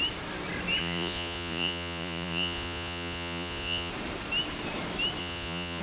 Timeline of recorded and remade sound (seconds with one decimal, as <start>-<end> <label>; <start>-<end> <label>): 0.0-0.8 recorded; 0.8-3.9 remade; 3.9-5.2 recorded; 5.2-5.8 remade